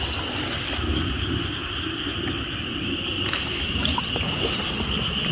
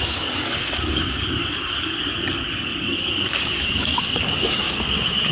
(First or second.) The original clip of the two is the first